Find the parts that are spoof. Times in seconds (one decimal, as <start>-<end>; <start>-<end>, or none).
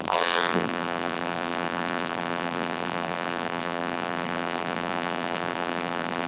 0.0-6.3